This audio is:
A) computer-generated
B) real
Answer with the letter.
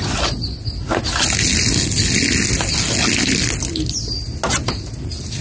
B